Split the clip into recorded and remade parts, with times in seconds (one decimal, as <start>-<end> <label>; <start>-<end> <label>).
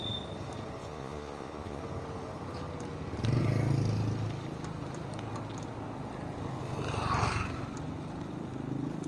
0.0-0.8 recorded; 0.8-1.8 remade; 1.8-9.1 recorded